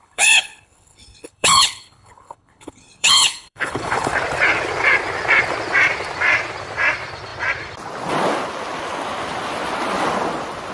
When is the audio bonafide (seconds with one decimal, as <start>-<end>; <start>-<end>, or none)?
4.1-10.7